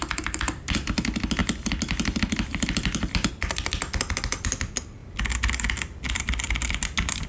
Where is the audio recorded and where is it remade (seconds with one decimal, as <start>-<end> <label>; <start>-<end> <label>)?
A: 0.0-7.3 recorded